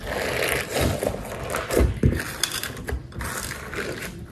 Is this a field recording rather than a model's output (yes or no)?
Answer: yes